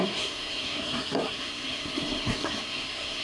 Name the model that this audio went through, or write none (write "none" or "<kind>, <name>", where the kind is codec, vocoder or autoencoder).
codec, SNAC